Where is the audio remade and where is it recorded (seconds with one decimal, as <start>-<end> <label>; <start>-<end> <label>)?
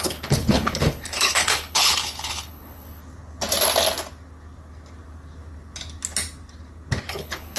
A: 0.0-3.0 remade; 3.0-7.1 recorded; 7.1-7.6 remade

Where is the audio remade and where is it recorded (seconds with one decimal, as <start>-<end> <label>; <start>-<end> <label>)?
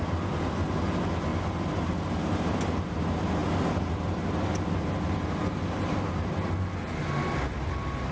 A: 0.0-8.1 recorded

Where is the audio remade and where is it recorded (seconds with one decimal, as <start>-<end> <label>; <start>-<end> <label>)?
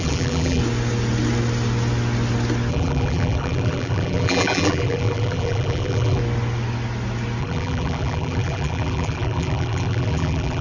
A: 0.0-0.6 remade; 0.6-2.7 recorded; 2.7-6.2 remade; 6.2-7.4 recorded; 7.4-10.6 remade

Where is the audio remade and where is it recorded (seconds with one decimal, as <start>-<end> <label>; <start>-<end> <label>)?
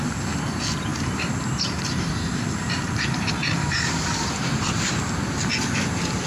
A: 0.0-0.9 recorded; 0.9-4.3 remade; 4.3-6.3 recorded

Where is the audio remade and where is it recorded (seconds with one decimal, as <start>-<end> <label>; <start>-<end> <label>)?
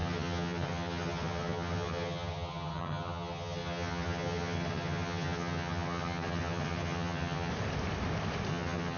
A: 0.0-7.5 remade; 7.5-8.5 recorded; 8.5-9.0 remade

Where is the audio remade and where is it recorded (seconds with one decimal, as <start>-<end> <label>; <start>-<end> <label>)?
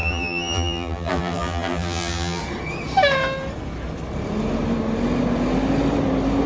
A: 0.0-2.4 remade; 2.4-6.5 recorded